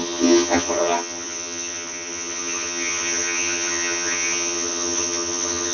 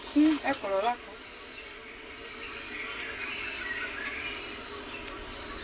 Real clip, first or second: second